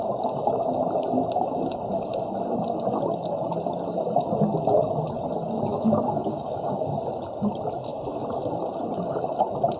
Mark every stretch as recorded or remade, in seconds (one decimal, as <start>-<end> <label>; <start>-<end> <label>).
0.0-5.7 recorded; 5.7-6.9 remade; 6.9-9.8 recorded